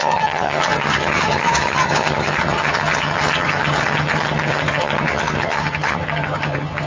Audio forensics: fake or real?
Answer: fake